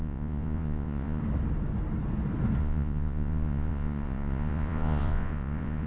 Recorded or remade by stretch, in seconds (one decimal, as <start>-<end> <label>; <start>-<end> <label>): 0.0-1.2 remade; 1.2-2.6 recorded; 2.6-5.9 remade